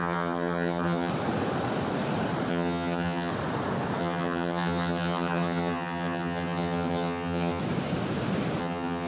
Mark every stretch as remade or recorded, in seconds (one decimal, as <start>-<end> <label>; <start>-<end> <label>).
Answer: 0.0-1.1 remade; 1.1-2.5 recorded; 2.5-3.3 remade; 3.3-4.0 recorded; 4.0-7.6 remade; 7.6-8.6 recorded; 8.6-9.1 remade